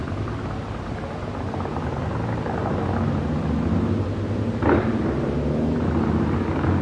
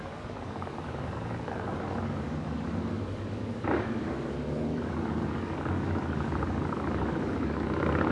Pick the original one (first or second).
first